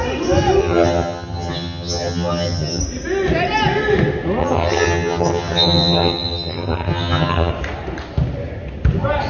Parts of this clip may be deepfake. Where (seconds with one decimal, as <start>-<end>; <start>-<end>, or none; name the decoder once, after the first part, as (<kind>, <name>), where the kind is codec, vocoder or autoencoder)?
0.6-2.8 (vocoder, HiFi-GAN); 4.4-7.5